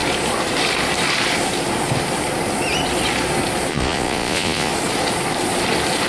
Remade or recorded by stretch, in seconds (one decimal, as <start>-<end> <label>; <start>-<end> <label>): 0.0-3.7 recorded; 3.7-4.7 remade; 4.7-6.1 recorded